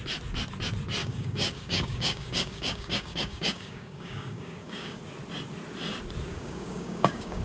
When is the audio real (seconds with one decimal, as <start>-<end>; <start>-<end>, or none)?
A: 0.0-1.0; 5.0-6.3